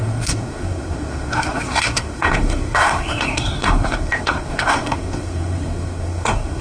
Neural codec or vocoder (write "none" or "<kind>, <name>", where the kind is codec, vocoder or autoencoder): codec, SNAC